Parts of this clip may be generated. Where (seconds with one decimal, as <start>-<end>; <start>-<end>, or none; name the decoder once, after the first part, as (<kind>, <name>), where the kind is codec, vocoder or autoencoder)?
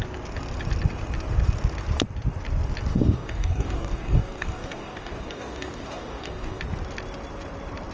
2.9-6.6 (codec, DAC)